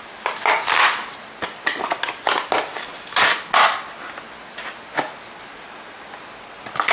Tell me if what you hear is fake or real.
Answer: real